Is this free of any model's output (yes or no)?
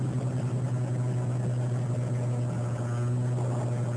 yes